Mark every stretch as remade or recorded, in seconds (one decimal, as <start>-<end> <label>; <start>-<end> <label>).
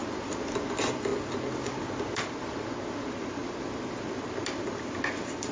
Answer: 0.0-5.5 recorded